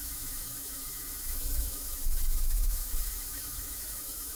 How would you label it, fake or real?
fake